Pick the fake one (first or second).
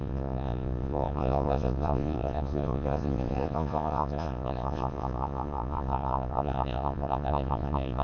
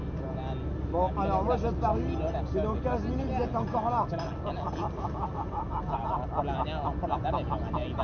first